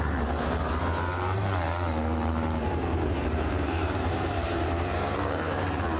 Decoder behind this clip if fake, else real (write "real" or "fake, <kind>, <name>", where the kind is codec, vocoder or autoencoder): fake, vocoder, BigVGAN v2